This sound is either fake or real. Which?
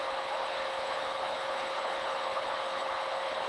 fake